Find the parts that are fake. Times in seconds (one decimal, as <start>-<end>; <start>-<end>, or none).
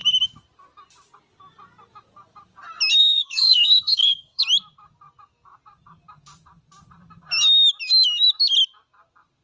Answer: 3.0-4.4